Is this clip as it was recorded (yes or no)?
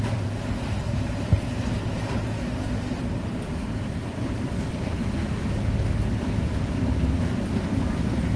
no